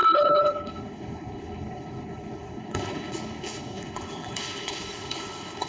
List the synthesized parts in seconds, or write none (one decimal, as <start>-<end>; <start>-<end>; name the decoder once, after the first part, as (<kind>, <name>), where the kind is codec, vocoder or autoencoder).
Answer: 0.0-5.7 (codec, HILCodec)

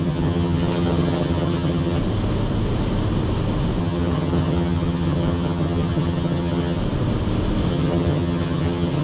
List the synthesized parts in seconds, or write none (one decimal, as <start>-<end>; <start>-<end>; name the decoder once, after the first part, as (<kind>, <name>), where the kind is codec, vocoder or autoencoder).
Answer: 0.0-2.0 (vocoder, HiFi-GAN); 3.8-6.8; 7.7-9.0

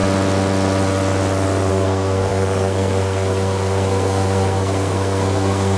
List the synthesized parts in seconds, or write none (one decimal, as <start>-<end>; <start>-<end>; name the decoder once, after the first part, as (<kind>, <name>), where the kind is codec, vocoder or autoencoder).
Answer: 1.7-5.8 (codec, SNAC)